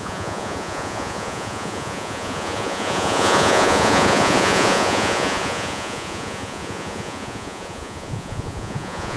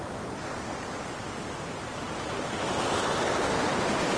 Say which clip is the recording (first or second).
second